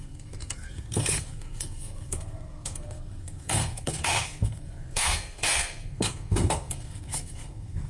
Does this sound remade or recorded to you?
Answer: remade